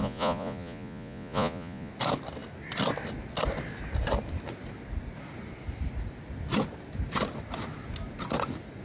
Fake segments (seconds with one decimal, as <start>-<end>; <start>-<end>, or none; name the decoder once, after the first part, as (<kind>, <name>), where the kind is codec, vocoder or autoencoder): 0.0-1.9 (vocoder, Vocos)